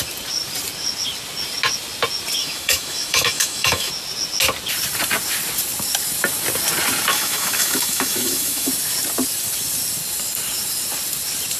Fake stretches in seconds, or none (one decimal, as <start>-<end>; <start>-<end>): 2.4-3.9; 7.1-8.7